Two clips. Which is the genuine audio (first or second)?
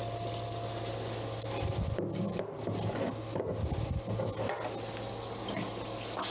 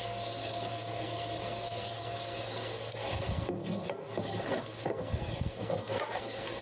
first